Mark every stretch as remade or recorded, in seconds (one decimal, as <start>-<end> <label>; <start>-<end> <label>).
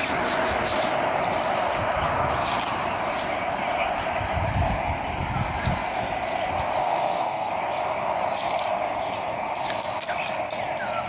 0.0-6.8 recorded; 6.8-7.5 remade; 7.5-11.1 recorded